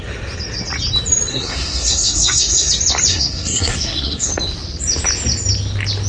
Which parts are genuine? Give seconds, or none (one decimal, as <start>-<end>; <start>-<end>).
0.0-1.3; 2.7-3.1; 4.3-6.1